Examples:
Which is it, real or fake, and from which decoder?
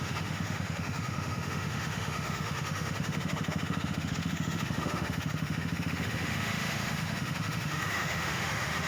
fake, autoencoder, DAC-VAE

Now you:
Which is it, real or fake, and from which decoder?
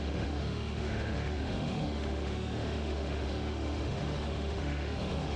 fake, autoencoder, DAC-VAE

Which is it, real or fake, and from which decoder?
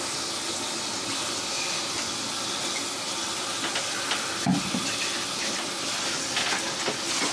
real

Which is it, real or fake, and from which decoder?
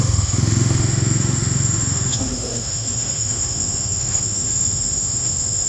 fake, autoencoder, DAC-VAE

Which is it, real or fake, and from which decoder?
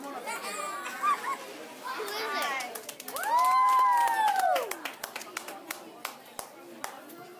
real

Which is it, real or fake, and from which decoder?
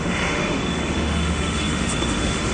fake, autoencoder, DAC-VAE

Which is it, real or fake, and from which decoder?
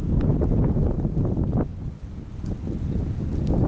real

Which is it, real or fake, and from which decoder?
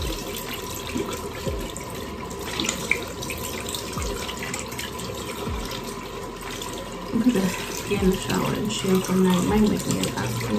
real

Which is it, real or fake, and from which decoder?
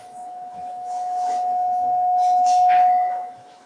fake, autoencoder, DAC-VAE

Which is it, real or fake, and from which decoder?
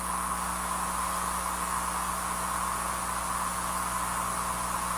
real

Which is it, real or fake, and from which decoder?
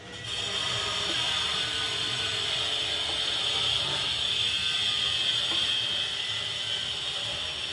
real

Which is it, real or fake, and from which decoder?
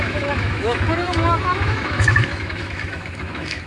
fake, autoencoder, DAC-VAE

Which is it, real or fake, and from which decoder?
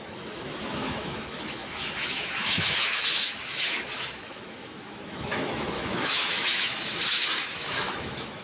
fake, autoencoder, DAC-VAE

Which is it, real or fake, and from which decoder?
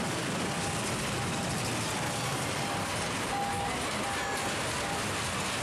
real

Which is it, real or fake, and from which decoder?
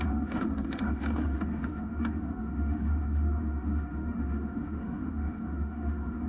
fake, autoencoder, DAC-VAE